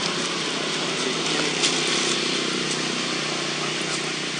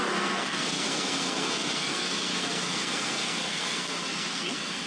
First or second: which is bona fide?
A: first